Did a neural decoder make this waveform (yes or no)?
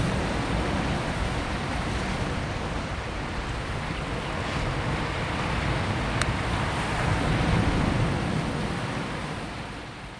no